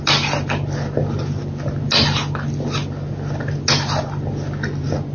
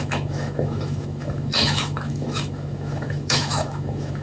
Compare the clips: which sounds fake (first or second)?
second